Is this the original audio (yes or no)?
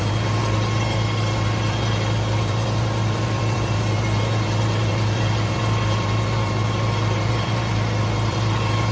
no